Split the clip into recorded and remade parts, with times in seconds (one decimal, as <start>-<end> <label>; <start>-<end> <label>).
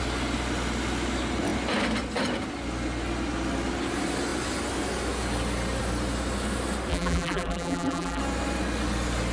0.0-6.9 recorded; 6.9-8.2 remade; 8.2-9.3 recorded